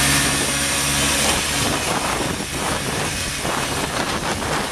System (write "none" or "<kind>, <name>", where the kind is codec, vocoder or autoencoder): none